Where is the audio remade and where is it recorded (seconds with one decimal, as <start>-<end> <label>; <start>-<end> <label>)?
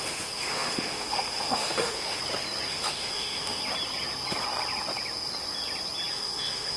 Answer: 0.0-2.2 remade; 2.2-2.7 recorded; 2.7-3.6 remade; 3.6-6.1 recorded; 6.1-6.8 remade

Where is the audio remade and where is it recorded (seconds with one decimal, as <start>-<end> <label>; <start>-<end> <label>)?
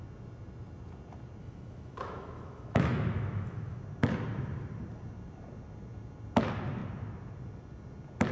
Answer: 0.0-1.4 recorded; 1.4-3.8 remade; 3.8-8.3 recorded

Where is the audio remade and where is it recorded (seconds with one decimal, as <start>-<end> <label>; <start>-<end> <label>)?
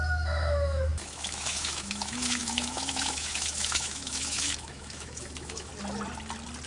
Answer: 0.0-5.7 remade; 5.7-6.7 recorded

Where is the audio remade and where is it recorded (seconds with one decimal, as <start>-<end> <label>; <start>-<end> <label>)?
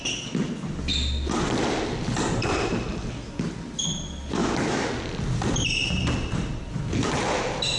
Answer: 0.0-4.4 recorded; 4.4-4.9 remade; 4.9-7.8 recorded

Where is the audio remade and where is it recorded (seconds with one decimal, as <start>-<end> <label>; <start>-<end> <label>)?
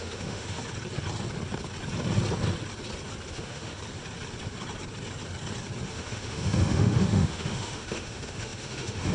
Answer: 0.0-0.6 remade; 0.6-3.3 recorded; 3.3-3.8 remade; 3.8-5.9 recorded; 5.9-9.1 remade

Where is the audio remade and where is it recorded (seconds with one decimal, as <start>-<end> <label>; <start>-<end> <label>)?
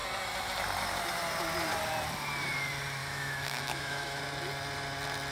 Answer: 0.0-3.0 recorded; 3.0-4.2 remade; 4.2-5.3 recorded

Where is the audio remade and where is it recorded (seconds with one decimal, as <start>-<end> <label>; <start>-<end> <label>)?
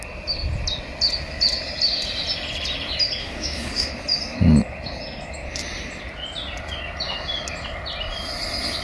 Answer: 0.0-3.2 recorded; 3.2-3.9 remade; 3.9-8.8 recorded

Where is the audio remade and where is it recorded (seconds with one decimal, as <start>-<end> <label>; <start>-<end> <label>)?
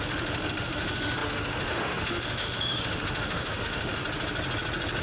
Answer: 0.0-4.0 remade; 4.0-5.0 recorded